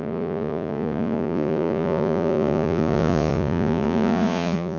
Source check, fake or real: fake